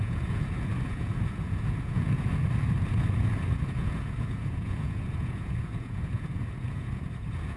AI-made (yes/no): yes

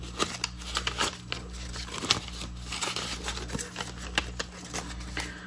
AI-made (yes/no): no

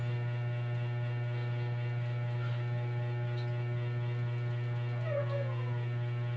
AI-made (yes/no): no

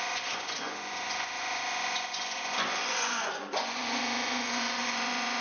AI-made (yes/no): yes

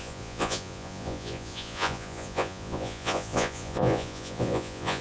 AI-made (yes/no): yes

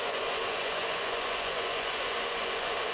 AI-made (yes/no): yes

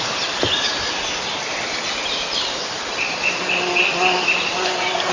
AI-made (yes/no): no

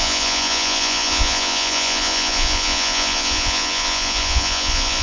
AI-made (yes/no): yes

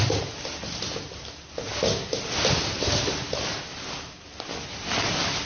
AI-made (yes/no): no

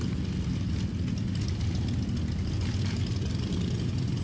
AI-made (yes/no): no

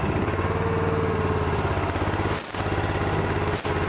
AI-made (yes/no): no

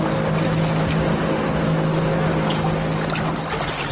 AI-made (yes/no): no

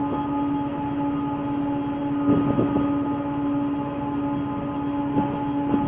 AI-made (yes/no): no